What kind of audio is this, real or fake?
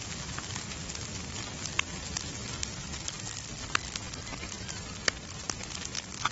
real